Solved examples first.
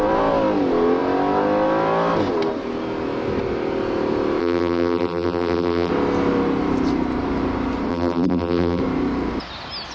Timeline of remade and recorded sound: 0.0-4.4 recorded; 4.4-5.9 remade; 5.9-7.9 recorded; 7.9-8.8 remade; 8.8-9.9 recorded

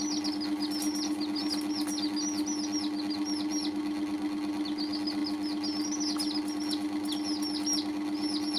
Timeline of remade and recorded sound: 0.0-8.6 recorded

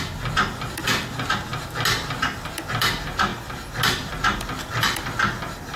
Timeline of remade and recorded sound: 0.0-5.8 recorded

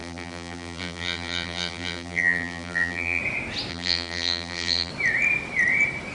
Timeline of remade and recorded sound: 0.0-3.2 remade; 3.2-3.7 recorded; 3.7-4.9 remade; 4.9-6.1 recorded

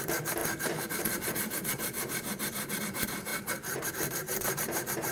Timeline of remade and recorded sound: 0.0-5.1 remade

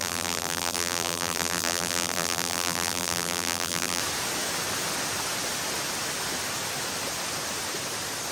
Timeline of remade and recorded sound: 0.0-4.0 remade; 4.0-8.3 recorded

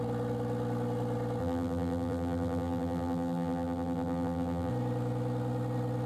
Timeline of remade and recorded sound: 0.0-1.4 recorded; 1.4-4.7 remade; 4.7-6.1 recorded